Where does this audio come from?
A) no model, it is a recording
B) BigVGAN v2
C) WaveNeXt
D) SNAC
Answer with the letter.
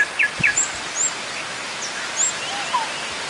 A